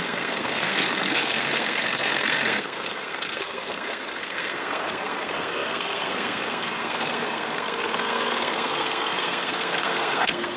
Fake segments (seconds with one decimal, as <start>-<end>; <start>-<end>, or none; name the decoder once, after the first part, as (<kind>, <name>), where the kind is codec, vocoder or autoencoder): 0.0-10.6 (codec, SNAC)